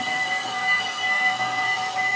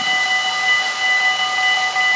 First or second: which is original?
second